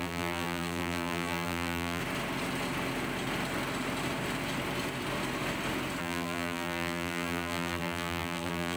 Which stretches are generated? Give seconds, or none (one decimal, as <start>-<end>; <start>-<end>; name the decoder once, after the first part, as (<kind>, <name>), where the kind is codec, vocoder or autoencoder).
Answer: 0.0-2.0 (vocoder, BigVGAN v2); 6.0-8.8